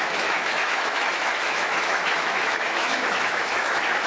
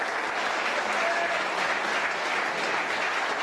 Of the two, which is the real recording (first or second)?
second